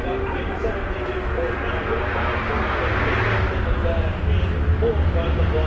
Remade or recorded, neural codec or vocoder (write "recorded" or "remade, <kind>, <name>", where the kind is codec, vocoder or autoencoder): recorded